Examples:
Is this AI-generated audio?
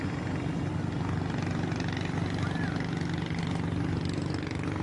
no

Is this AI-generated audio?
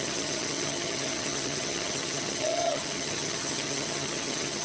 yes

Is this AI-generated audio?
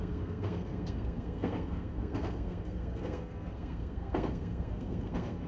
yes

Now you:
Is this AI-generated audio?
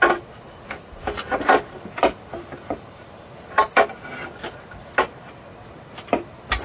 no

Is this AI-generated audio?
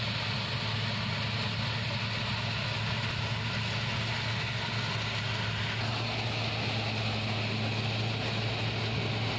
no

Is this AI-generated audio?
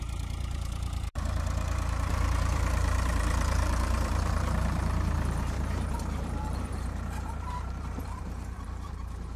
yes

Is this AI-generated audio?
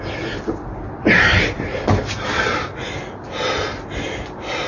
no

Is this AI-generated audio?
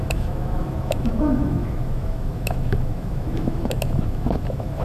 yes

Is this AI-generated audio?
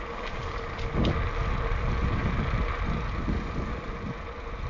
no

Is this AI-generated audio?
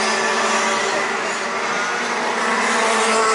no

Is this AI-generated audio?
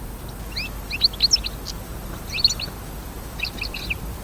no